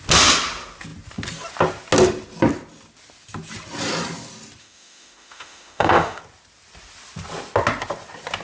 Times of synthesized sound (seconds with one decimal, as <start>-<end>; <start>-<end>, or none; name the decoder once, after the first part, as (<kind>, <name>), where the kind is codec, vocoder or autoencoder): 4.6-6.2 (autoencoder, DAC-VAE)